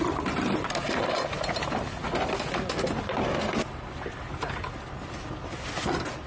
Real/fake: real